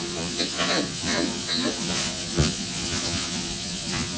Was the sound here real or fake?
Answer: fake